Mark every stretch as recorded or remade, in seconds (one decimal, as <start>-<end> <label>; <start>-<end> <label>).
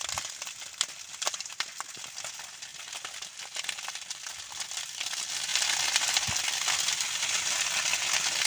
0.0-8.5 recorded